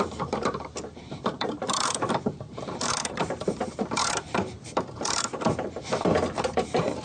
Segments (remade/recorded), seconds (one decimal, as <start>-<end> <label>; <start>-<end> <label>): 0.0-7.0 remade